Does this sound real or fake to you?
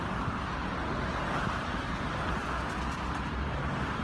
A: real